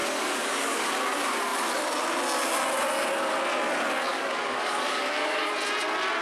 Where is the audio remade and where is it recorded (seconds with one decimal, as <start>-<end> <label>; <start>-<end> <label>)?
0.0-0.9 remade; 0.9-4.1 recorded; 4.1-5.5 remade; 5.5-6.2 recorded